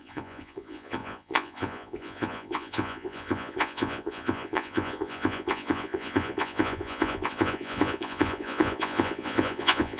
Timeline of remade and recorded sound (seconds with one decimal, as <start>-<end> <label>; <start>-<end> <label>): 0.0-10.0 remade